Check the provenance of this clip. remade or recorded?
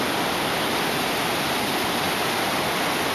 recorded